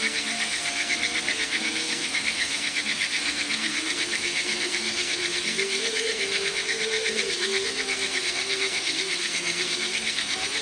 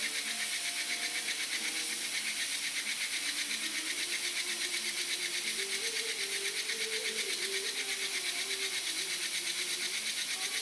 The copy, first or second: first